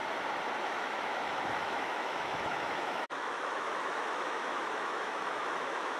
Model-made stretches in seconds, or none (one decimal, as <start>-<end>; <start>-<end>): 0.6-6.0

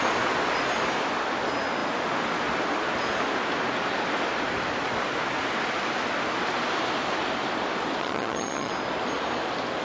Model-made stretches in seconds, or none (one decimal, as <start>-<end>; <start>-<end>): 8.0-8.7

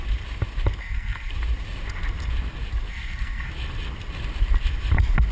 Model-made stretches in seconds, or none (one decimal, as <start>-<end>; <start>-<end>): 0.8-1.3; 2.9-3.5

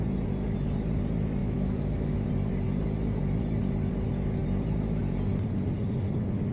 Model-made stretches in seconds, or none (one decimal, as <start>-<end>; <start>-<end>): 1.4-2.3

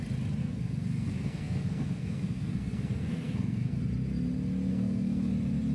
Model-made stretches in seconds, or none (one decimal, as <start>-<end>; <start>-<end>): 0.4-3.8; 4.7-5.3

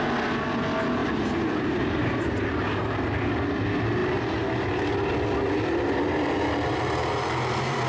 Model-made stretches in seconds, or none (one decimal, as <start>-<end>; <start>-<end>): 1.0-3.1